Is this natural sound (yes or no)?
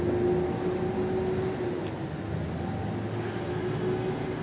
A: yes